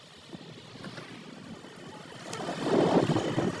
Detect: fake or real real